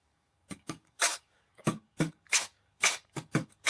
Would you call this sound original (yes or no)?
no